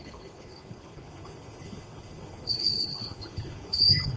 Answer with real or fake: fake